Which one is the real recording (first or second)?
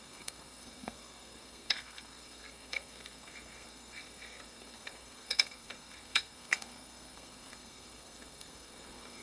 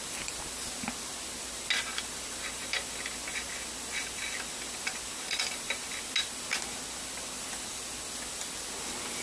second